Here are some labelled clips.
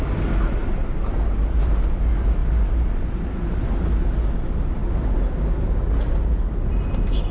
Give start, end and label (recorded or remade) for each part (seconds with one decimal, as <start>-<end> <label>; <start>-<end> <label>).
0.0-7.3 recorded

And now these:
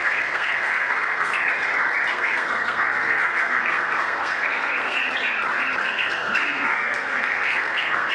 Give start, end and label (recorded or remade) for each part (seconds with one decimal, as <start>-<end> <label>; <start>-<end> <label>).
0.0-1.4 remade; 1.4-2.1 recorded; 2.1-5.0 remade; 5.0-5.8 recorded; 5.8-8.1 remade

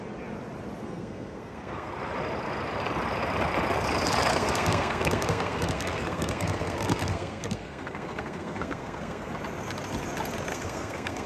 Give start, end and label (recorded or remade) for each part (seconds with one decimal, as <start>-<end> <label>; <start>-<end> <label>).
0.0-0.8 recorded; 0.8-1.9 remade; 1.9-4.3 recorded; 4.3-9.3 remade; 9.3-10.5 recorded; 10.5-11.3 remade

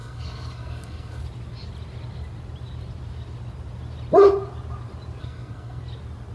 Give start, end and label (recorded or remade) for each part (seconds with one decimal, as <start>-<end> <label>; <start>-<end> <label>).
0.0-1.2 remade; 1.2-5.2 recorded; 5.2-5.8 remade; 5.8-6.3 recorded